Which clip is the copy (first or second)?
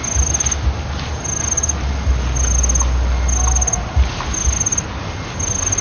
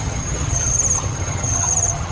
second